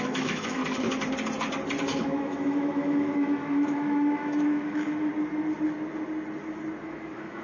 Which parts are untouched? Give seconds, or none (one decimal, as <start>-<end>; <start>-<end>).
0.6-2.0; 5.1-6.8